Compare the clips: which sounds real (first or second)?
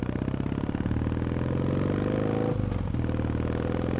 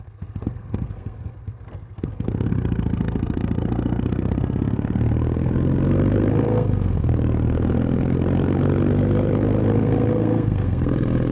first